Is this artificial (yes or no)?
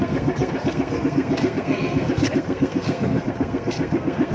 yes